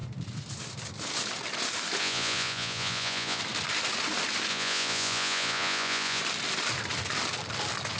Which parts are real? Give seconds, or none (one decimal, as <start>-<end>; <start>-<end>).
0.0-2.0; 3.4-4.5; 6.2-8.0